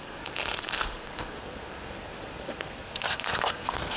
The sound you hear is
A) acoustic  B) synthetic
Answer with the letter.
B